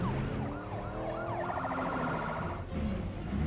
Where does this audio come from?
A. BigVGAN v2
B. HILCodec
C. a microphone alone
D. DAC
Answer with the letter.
C